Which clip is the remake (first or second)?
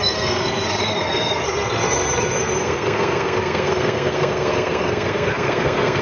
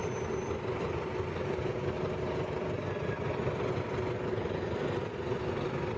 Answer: first